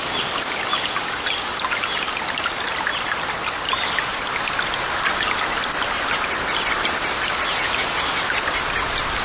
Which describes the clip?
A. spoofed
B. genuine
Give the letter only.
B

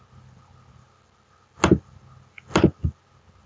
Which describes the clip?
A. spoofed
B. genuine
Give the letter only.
B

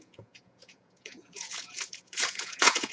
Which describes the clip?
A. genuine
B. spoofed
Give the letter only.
B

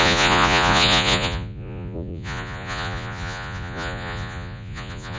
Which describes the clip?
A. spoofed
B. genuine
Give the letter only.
A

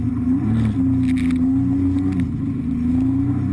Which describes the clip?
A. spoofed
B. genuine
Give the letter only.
B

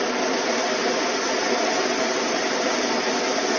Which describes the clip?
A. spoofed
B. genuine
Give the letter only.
B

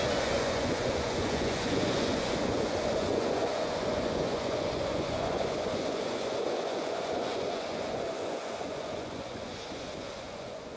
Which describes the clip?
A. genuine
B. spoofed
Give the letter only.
B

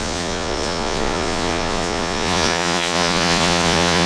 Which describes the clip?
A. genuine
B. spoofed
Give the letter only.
B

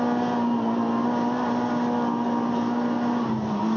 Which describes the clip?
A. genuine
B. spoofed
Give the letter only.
A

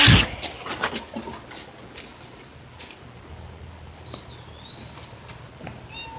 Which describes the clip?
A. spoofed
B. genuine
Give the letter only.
B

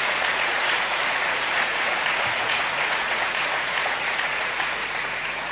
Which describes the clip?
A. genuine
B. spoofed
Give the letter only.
B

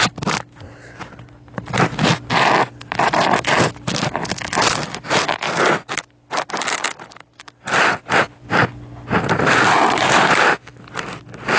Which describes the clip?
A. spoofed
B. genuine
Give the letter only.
B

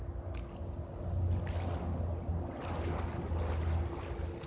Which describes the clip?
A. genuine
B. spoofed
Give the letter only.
A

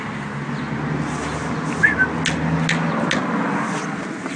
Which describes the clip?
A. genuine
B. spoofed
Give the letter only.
A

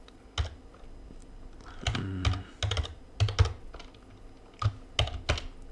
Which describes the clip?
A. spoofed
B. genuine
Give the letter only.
B